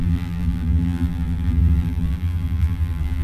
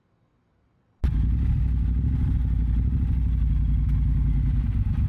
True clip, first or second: second